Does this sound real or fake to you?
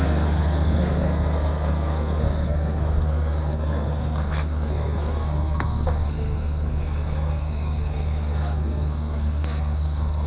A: fake